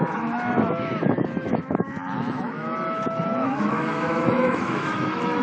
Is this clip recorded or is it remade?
remade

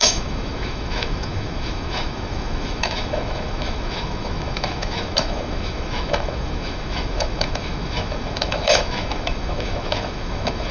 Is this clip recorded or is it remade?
remade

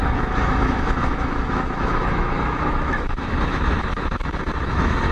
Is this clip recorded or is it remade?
remade